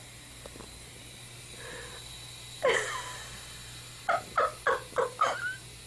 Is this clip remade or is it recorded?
recorded